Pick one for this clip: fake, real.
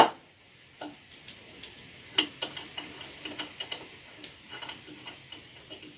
real